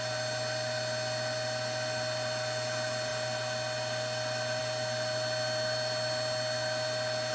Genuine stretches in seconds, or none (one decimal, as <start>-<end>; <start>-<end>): 0.0-7.3